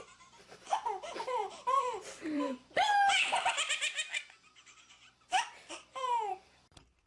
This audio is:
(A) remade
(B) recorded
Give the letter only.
A